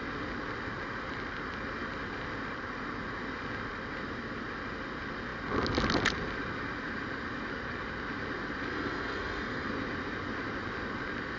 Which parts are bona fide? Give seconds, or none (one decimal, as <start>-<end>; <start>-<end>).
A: 0.0-8.7; 9.7-11.4